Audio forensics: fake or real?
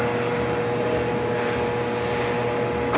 real